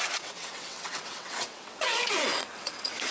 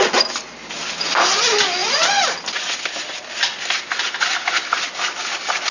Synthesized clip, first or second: first